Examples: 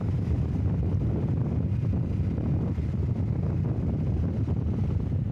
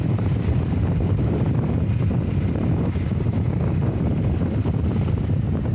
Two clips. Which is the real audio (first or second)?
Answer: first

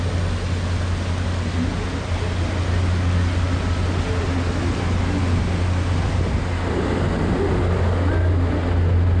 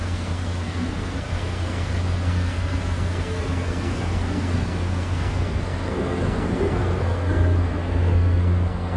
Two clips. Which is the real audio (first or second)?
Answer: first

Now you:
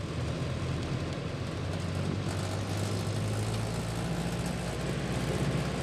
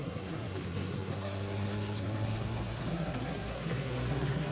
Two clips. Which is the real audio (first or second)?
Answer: first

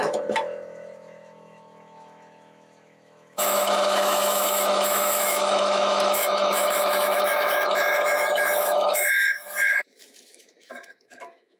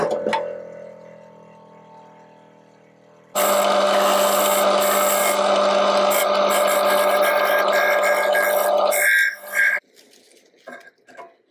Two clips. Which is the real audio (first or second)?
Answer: second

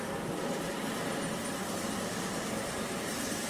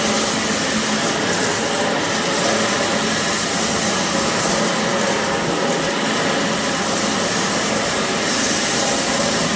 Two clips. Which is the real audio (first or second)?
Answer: second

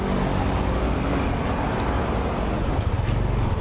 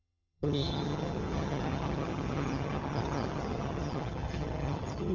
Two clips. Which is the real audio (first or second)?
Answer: first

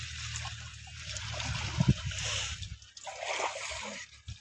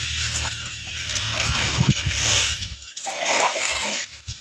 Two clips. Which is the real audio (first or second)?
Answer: first